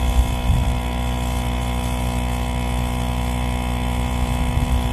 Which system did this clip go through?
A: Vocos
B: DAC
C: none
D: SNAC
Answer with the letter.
C